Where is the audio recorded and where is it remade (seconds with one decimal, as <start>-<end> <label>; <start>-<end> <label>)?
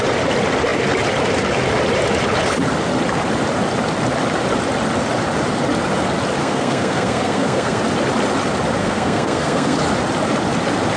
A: 0.0-6.4 recorded; 6.4-7.8 remade; 7.8-8.8 recorded; 8.8-9.8 remade; 9.8-11.0 recorded